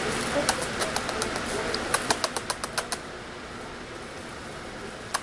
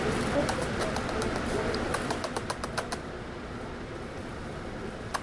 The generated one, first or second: second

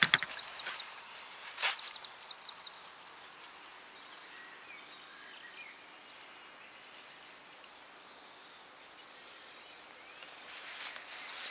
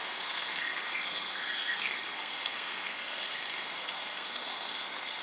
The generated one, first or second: second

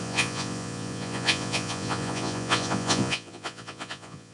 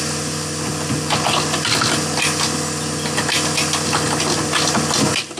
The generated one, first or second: first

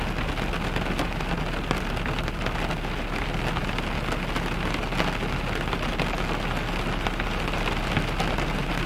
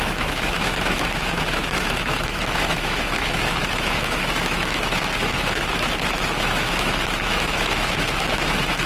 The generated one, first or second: second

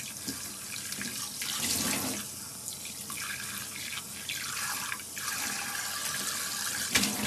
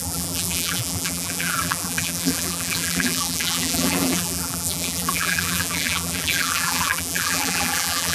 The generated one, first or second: second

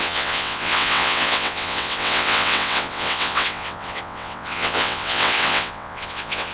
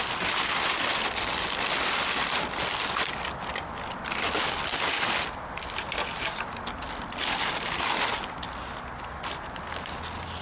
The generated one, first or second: first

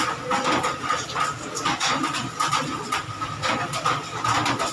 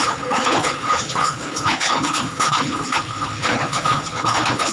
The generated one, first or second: second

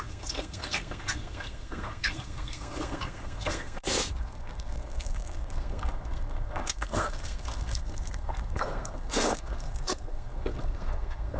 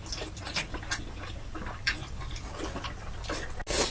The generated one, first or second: first